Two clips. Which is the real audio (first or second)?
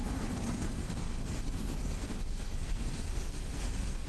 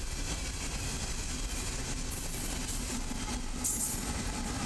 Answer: second